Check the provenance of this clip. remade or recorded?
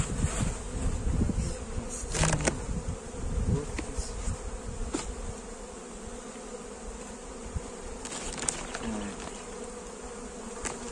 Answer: recorded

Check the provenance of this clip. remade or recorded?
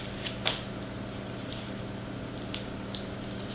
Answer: recorded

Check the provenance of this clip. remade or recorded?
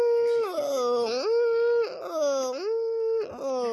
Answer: recorded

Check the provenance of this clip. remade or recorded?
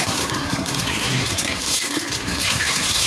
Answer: remade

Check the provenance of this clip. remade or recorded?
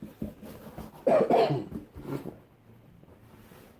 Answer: recorded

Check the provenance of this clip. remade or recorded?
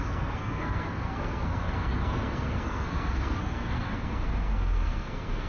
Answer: remade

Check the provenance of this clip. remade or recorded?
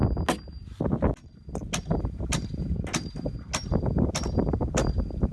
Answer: recorded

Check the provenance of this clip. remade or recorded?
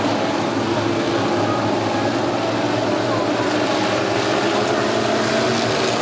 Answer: recorded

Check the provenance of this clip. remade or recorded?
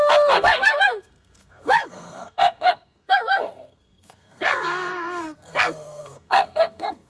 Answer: remade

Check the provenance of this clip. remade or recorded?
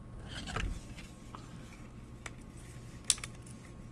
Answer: recorded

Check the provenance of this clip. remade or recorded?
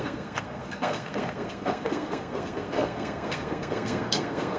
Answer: remade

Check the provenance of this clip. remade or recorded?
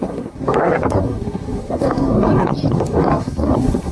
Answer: remade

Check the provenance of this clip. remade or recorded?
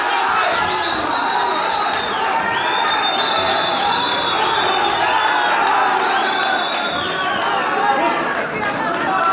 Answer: recorded